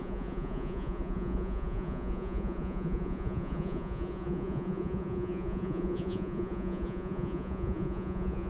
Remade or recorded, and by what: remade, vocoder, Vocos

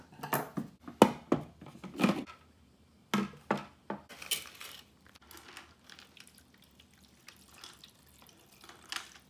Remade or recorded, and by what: recorded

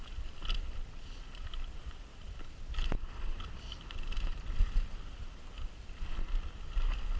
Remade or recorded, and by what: recorded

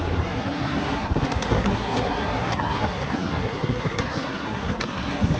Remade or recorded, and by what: remade, codec, SNAC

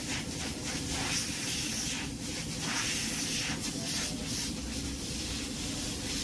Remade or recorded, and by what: recorded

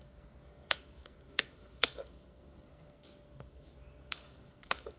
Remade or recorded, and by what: remade, codec, SNAC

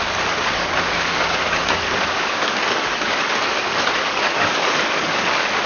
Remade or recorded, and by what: remade, codec, DAC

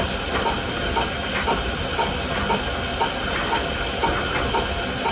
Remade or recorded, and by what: recorded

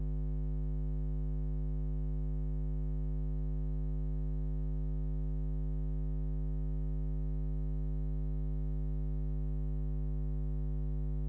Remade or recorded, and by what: recorded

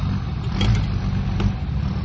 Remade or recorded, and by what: recorded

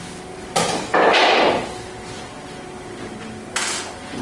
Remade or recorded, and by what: recorded